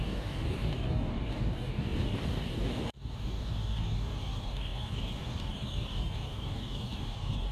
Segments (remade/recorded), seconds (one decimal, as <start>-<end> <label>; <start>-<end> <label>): 0.0-7.5 remade